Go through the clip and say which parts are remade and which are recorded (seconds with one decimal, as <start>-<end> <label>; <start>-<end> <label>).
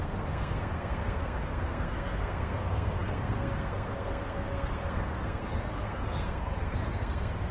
0.0-7.5 remade